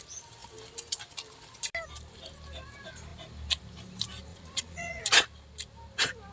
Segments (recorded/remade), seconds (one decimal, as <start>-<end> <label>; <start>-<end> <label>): 0.0-4.3 recorded; 4.3-5.0 remade; 5.0-6.3 recorded